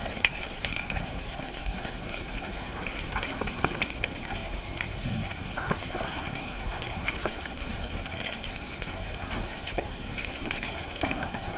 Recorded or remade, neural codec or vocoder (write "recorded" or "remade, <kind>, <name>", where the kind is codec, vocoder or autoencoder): remade, codec, SNAC